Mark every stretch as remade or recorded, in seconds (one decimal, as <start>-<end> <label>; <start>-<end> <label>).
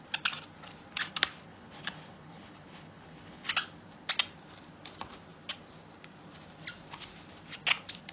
0.0-1.5 recorded; 1.5-3.5 remade; 3.5-8.1 recorded